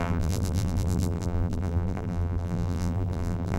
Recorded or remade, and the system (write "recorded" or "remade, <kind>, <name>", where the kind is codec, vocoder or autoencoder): remade, vocoder, BigVGAN v2